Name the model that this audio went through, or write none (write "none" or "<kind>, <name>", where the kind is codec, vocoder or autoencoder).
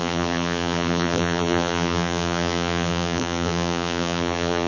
vocoder, BigVGAN v2